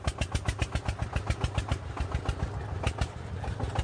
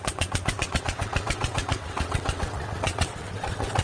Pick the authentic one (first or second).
first